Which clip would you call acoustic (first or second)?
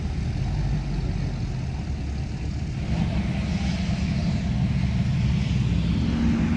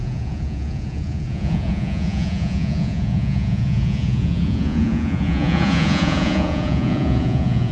first